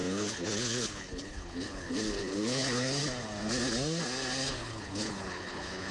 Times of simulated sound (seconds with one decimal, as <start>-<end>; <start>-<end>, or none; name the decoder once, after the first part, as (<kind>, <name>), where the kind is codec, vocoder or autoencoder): 0.0-3.0 (codec, HILCodec); 4.6-5.9